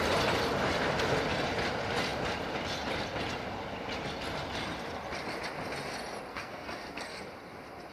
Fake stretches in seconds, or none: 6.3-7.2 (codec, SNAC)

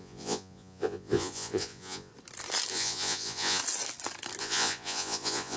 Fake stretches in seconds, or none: 0.0-2.1 (vocoder, Vocos); 2.7-3.6; 4.4-5.6

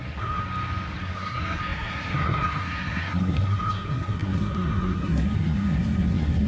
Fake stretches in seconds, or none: 0.0-0.4 (codec, SNAC); 1.0-6.5

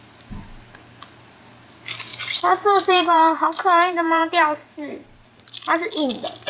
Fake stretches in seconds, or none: 2.1-5.9 (vocoder, BigVGAN v2)

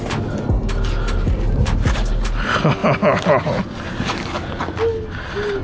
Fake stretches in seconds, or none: none

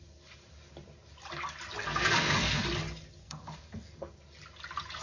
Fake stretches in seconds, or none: 1.8-2.6 (codec, SNAC); 3.2-4.1

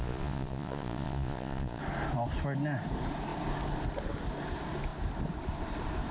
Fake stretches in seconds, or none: 0.0-1.8 (vocoder, Vocos)

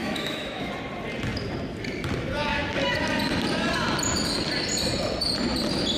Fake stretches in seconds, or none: 0.0-0.7 (autoencoder, DAC-VAE)